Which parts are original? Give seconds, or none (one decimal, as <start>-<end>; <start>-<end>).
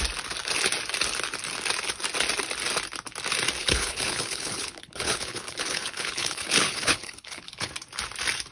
0.0-3.6; 7.7-8.5